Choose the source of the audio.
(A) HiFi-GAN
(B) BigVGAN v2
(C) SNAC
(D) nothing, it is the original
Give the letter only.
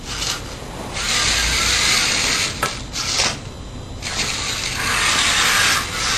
D